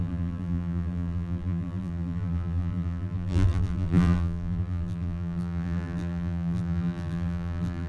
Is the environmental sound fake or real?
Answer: fake